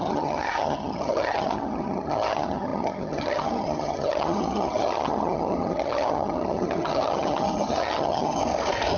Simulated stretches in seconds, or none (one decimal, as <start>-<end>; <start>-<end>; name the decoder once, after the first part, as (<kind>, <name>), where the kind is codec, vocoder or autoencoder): 0.0-8.4 (vocoder, HiFi-GAN)